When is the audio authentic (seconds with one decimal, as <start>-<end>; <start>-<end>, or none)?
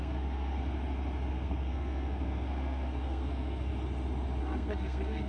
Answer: 0.6-1.3; 3.7-4.4